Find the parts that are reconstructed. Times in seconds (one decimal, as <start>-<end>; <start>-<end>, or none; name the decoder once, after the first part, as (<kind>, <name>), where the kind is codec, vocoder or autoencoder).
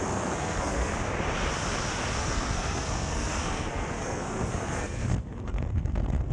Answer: 0.0-0.9 (codec, SNAC); 2.2-6.3